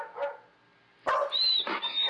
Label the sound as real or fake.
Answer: real